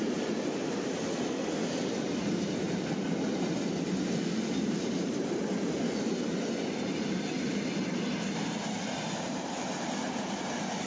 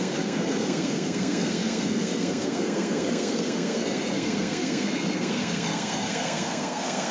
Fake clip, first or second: second